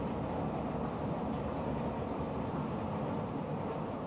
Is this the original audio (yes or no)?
yes